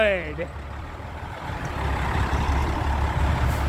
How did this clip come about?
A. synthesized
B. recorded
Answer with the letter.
A